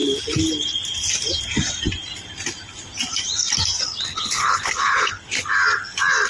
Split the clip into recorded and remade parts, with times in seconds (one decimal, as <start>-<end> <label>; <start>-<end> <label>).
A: 0.0-4.1 recorded; 4.1-5.2 remade; 5.2-6.3 recorded